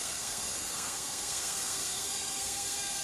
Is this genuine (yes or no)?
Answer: no